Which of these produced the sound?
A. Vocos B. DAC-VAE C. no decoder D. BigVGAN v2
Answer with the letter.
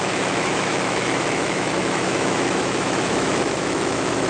B